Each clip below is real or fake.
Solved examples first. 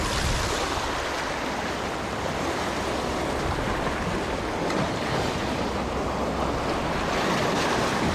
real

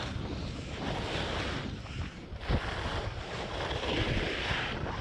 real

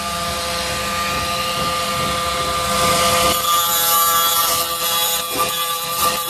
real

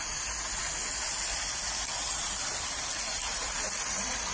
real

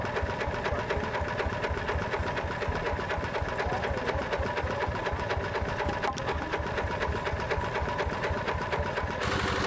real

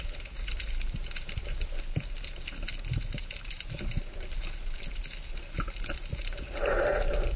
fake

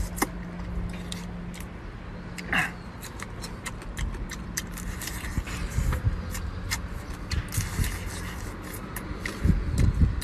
real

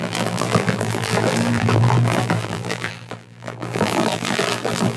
fake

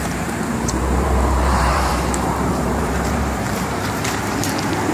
fake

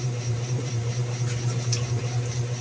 fake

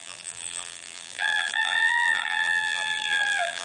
fake